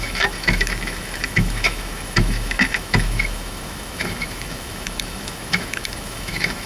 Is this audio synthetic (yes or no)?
yes